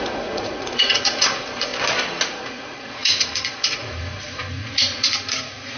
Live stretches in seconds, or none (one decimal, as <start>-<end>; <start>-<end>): 1.7-2.3

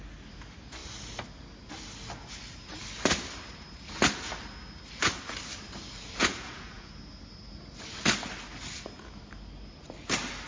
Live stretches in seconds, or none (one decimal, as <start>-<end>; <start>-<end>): 0.0-6.2; 6.9-10.5

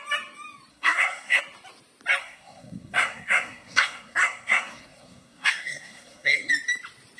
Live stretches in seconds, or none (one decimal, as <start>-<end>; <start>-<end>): 0.0-0.7; 1.4-2.2; 6.5-7.2

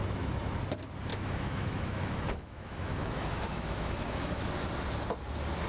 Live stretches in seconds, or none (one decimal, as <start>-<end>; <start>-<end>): 0.6-1.1; 4.5-5.7

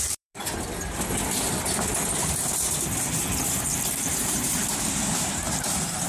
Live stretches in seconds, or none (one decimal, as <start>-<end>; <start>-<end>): 0.4-4.1